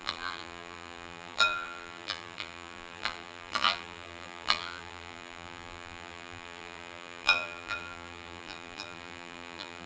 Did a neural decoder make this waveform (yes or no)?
yes